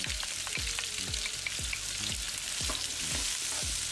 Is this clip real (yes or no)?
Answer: yes